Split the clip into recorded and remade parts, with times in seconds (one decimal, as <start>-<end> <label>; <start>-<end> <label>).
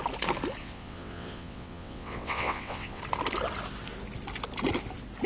0.0-0.6 recorded; 0.6-3.0 remade; 3.0-5.3 recorded